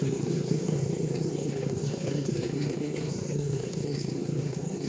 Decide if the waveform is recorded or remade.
remade